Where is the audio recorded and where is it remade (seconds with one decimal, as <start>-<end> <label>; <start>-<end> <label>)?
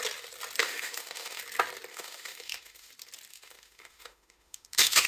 0.0-0.6 recorded; 0.6-1.4 remade; 1.4-1.9 recorded; 1.9-2.9 remade; 2.9-3.3 recorded; 3.3-5.1 remade